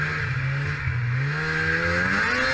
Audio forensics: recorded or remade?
recorded